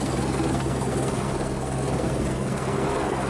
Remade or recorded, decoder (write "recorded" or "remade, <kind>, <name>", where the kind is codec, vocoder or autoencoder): remade, codec, SNAC